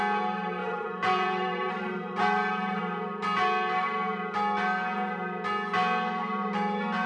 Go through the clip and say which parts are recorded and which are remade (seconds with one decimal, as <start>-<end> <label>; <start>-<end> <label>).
0.0-0.6 recorded; 0.6-2.8 remade; 2.8-7.1 recorded